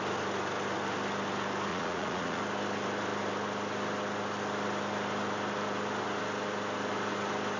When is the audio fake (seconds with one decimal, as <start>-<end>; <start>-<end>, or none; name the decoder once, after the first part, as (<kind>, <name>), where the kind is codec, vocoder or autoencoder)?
1.7-2.4 (vocoder, Vocos)